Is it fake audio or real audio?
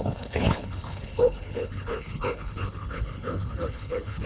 fake